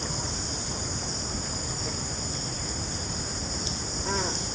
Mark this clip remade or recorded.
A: recorded